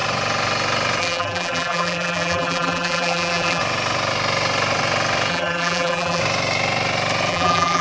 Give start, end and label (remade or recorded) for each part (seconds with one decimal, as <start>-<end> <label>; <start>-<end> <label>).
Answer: 0.0-1.0 recorded; 1.0-3.6 remade; 3.6-5.3 recorded; 5.3-6.2 remade; 6.2-7.3 recorded; 7.3-7.8 remade

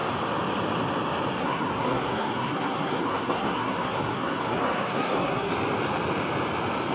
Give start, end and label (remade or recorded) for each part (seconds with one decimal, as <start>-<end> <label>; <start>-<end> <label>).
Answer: 0.0-1.4 recorded; 1.4-5.5 remade; 5.5-6.9 recorded

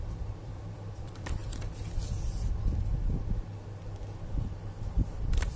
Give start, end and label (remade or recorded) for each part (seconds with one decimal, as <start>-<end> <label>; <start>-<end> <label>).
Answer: 0.0-1.4 remade; 1.4-4.8 recorded; 4.8-5.6 remade

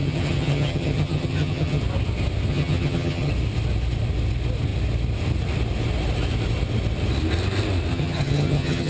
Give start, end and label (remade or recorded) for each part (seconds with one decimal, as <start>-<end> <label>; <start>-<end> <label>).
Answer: 0.0-1.8 remade; 1.8-2.5 recorded; 2.5-3.3 remade; 3.3-7.9 recorded; 7.9-8.9 remade

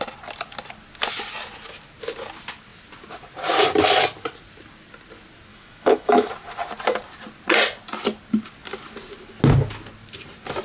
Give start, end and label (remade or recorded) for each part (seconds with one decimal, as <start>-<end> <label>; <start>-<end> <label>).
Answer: 0.0-5.5 recorded; 5.5-6.3 remade; 6.3-10.6 recorded

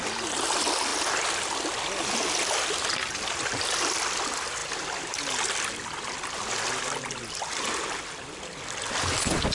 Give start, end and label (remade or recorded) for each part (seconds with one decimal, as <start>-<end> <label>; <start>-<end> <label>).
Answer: 0.0-9.5 recorded